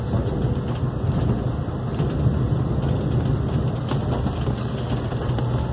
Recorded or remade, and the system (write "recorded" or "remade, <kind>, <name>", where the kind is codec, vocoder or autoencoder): recorded